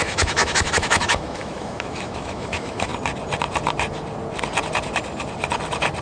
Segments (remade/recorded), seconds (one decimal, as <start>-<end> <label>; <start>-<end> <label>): 0.0-2.9 remade; 2.9-6.0 recorded